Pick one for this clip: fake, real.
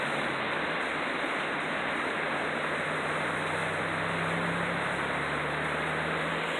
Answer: real